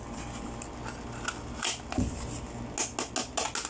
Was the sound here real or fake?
real